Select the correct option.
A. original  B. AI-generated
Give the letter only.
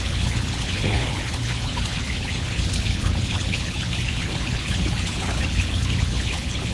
B